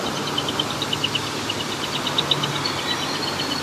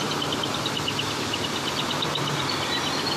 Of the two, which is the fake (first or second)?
second